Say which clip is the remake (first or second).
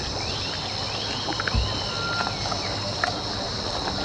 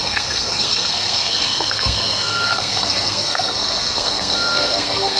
second